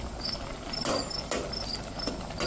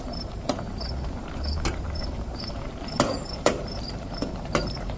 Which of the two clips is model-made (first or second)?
second